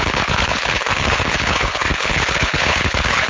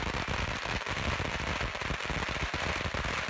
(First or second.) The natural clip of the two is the second